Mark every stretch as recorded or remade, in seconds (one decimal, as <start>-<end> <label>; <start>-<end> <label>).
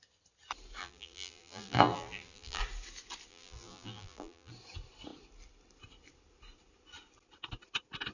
0.0-0.8 recorded; 0.8-2.6 remade; 2.6-3.3 recorded; 3.3-4.5 remade; 4.5-8.1 recorded